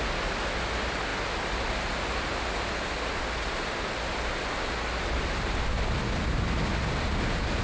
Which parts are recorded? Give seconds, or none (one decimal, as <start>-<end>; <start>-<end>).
0.0-7.6